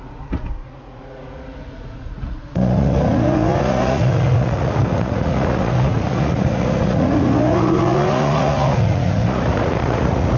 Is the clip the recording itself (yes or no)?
no